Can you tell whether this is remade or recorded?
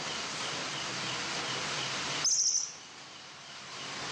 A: recorded